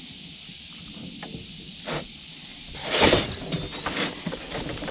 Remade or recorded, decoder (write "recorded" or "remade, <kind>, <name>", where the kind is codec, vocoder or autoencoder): recorded